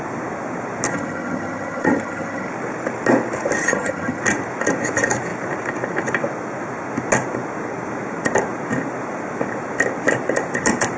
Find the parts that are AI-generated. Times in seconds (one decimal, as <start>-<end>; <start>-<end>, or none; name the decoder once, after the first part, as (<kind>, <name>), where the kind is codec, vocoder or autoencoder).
0.9-2.5 (vocoder, HiFi-GAN); 3.6-4.2